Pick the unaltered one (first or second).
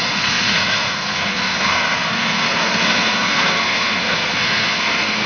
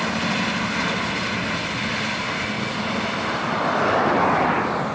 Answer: second